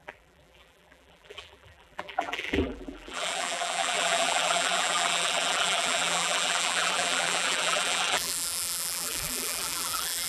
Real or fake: fake